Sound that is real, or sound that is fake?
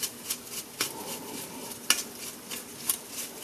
real